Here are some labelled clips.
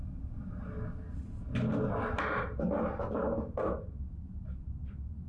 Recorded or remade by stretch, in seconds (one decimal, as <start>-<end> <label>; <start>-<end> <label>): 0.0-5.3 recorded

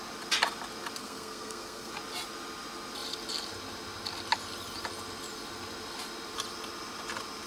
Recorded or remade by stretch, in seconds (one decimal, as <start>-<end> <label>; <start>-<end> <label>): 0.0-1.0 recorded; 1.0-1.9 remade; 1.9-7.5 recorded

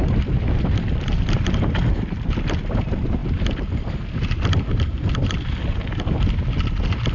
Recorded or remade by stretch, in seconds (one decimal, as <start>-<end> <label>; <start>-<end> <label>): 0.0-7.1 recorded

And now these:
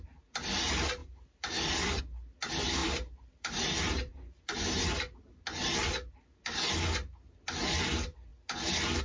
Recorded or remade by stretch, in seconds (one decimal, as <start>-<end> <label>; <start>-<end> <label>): 0.0-1.0 recorded; 1.0-2.0 remade; 2.0-2.8 recorded; 2.8-4.9 remade; 4.9-9.0 recorded

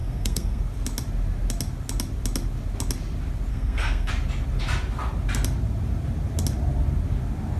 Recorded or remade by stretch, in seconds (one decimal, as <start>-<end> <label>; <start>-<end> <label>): 0.0-0.6 remade; 0.6-3.5 recorded; 3.5-4.1 remade; 4.1-7.6 recorded

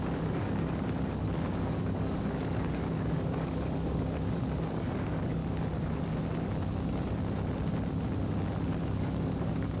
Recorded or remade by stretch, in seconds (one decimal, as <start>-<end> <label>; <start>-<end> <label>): 0.0-5.4 remade; 5.4-8.8 recorded; 8.8-9.8 remade

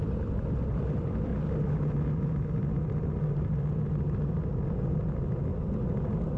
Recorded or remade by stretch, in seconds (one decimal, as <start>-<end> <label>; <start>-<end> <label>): 0.0-1.3 remade; 1.3-4.7 recorded; 4.7-5.5 remade; 5.5-6.4 recorded

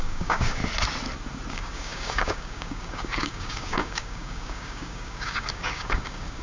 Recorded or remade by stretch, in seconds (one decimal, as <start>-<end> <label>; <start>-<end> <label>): 0.0-0.6 remade; 0.6-1.5 recorded; 1.5-6.4 remade